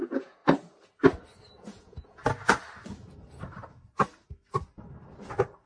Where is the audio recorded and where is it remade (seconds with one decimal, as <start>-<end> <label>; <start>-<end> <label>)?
0.0-0.4 remade; 0.4-1.5 recorded; 1.5-2.2 remade; 2.2-5.7 recorded